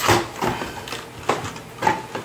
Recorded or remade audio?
recorded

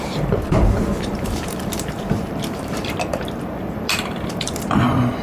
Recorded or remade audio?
remade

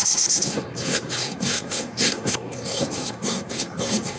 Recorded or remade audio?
remade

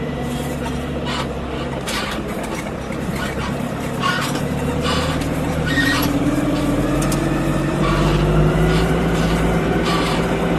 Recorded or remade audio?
remade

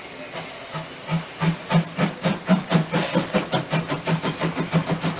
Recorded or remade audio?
recorded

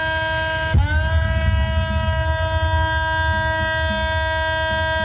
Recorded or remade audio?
recorded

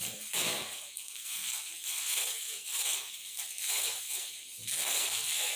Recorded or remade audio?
remade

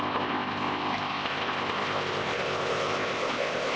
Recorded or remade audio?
remade